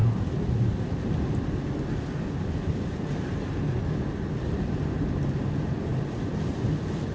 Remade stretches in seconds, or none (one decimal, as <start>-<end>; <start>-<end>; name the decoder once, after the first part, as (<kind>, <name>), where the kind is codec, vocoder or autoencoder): none